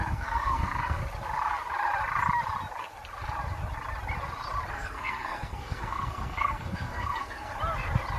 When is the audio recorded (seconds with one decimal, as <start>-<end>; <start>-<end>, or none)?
1.0-4.7; 7.5-8.2